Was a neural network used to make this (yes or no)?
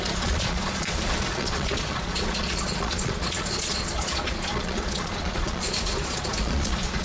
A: yes